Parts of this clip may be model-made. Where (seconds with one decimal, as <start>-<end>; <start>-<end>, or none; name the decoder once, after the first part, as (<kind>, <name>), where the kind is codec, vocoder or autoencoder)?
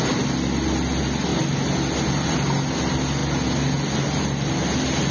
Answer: none